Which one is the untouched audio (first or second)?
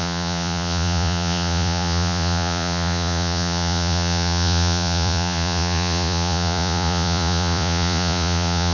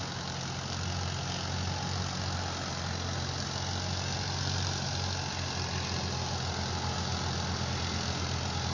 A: second